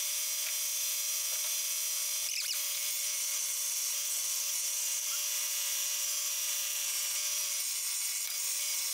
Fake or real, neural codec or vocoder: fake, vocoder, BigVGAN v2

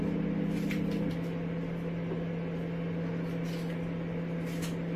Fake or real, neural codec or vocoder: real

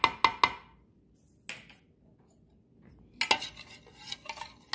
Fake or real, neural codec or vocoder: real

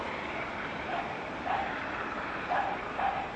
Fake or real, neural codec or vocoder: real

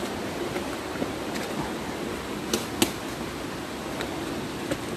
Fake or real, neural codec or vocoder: real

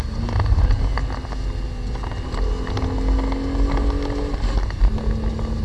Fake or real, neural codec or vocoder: real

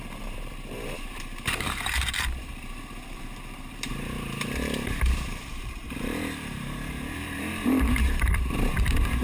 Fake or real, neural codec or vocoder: fake, vocoder, BigVGAN v2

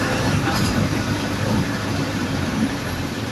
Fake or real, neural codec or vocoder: fake, vocoder, BigVGAN v2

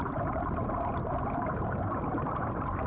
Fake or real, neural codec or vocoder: fake, vocoder, BigVGAN v2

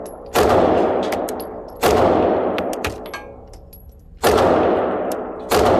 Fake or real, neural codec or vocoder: real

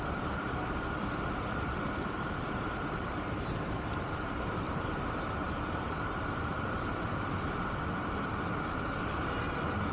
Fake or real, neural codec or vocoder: fake, vocoder, BigVGAN v2